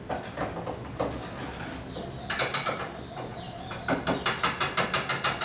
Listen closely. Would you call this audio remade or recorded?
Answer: recorded